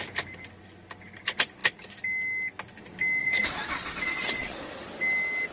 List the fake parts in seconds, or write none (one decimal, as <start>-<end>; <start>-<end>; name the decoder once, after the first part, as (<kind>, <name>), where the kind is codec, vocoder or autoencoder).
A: 3.2-4.6 (vocoder, Vocos)